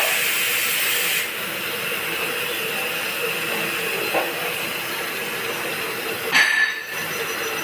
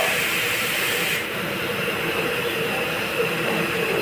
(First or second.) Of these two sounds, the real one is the first